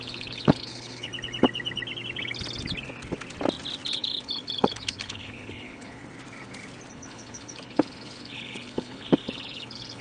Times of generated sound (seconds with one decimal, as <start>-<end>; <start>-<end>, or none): 0.0-1.1; 3.9-6.0; 6.9-10.0